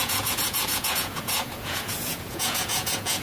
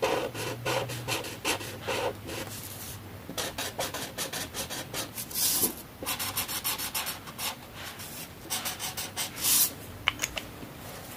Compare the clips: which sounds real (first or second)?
second